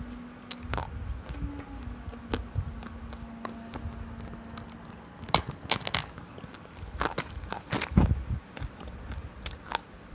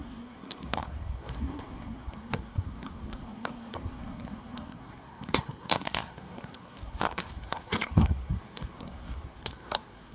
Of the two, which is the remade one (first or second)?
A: second